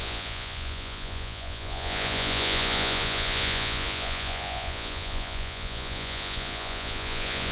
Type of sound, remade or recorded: remade